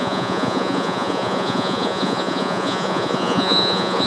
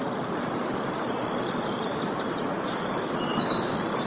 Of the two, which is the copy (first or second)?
first